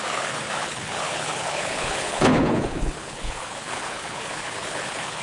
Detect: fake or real fake